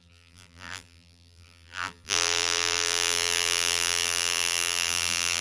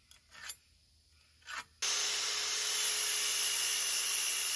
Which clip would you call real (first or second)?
second